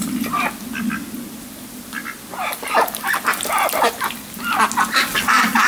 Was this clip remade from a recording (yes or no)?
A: no